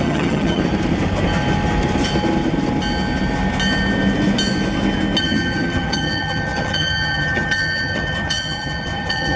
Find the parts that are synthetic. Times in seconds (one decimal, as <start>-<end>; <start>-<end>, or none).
0.0-0.6; 5.2-9.4